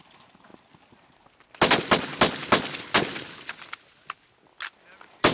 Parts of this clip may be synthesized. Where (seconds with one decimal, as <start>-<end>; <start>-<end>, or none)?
none